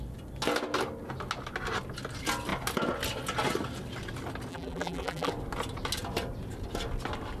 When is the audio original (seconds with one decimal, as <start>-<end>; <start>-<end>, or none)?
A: 0.0-4.5; 5.3-7.4